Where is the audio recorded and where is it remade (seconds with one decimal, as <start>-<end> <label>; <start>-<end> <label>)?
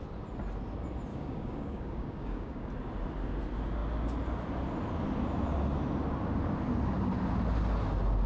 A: 0.0-1.1 recorded; 1.1-2.7 remade; 2.7-8.3 recorded